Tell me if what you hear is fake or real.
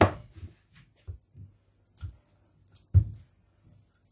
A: real